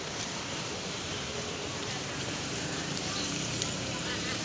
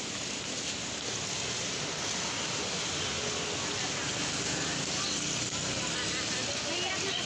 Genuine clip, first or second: second